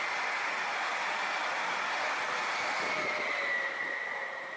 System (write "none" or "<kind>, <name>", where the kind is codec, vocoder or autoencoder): none